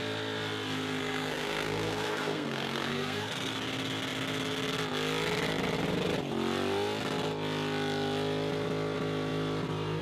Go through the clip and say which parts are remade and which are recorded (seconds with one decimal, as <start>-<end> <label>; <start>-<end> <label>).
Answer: 0.0-1.0 recorded; 1.0-3.5 remade; 3.5-10.0 recorded